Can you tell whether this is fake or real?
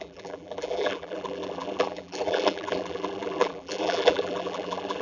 fake